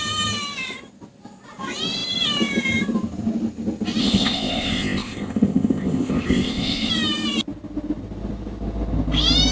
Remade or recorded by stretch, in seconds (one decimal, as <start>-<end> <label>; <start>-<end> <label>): 0.0-4.0 recorded; 4.0-6.9 remade; 6.9-9.5 recorded